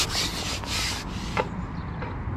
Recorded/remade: recorded